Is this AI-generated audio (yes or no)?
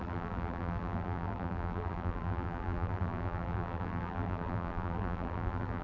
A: yes